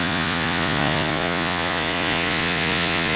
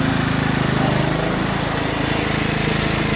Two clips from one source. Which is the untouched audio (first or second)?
second